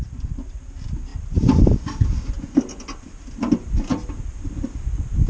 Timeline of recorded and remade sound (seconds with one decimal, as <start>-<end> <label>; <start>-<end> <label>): 0.0-5.3 recorded